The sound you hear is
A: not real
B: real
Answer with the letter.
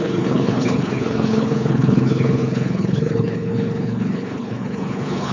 A